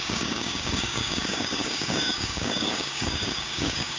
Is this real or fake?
fake